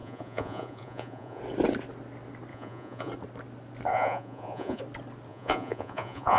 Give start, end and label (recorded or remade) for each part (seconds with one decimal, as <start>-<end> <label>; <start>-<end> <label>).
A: 0.0-1.4 remade; 1.4-2.5 recorded; 2.5-3.1 remade; 3.1-3.9 recorded; 3.9-4.8 remade; 4.8-5.3 recorded; 5.3-6.4 remade